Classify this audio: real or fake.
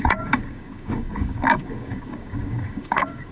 fake